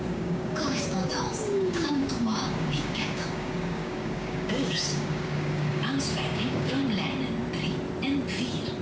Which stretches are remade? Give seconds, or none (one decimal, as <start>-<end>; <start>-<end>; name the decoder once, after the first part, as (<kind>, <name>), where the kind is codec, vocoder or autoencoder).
0.0-6.8 (codec, DAC)